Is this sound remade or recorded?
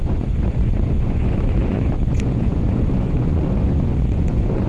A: remade